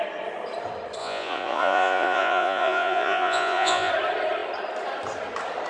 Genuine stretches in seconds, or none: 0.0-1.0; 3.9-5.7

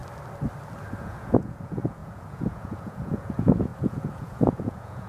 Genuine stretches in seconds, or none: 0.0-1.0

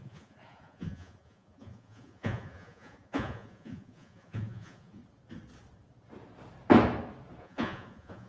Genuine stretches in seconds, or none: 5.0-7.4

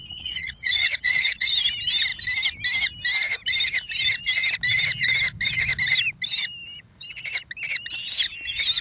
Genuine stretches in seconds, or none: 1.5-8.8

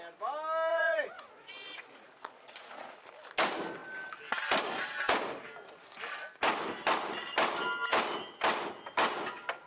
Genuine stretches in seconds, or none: 0.0-0.7; 3.0-9.7